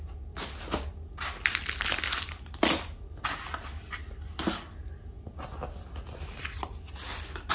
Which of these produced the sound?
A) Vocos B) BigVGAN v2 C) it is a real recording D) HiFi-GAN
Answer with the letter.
C